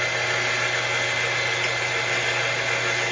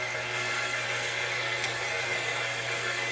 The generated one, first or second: second